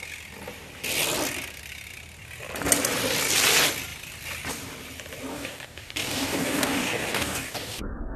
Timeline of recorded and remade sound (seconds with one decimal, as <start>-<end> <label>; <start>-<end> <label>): 0.0-5.3 recorded; 5.3-8.2 remade